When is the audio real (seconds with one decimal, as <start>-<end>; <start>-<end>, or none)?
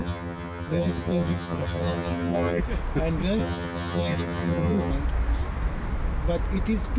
2.6-3.4; 4.9-7.0